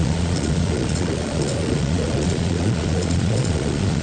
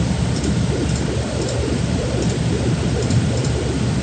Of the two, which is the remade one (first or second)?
first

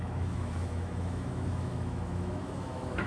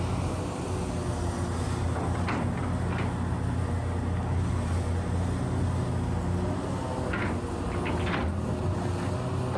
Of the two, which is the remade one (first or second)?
first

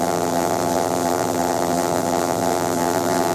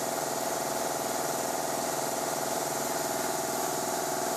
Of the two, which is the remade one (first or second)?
first